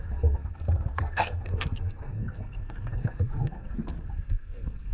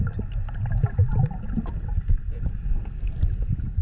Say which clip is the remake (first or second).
first